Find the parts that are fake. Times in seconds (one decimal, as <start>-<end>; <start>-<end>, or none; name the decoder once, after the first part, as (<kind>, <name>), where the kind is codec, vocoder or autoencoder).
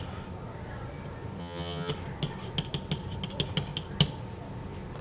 1.4-1.9 (vocoder, HiFi-GAN)